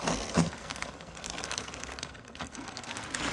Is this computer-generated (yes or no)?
yes